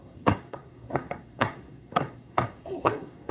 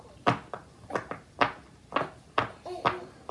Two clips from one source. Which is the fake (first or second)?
first